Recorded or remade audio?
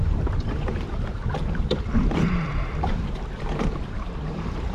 remade